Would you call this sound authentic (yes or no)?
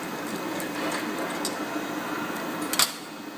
yes